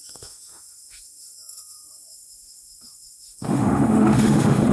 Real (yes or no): no